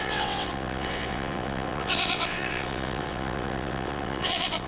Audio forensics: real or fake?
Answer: fake